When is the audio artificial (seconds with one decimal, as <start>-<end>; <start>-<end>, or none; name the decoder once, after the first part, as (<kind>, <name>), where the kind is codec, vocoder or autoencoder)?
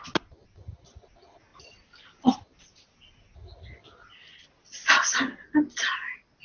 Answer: none